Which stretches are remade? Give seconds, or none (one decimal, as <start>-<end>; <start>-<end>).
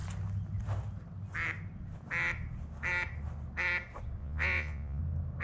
4.2-5.0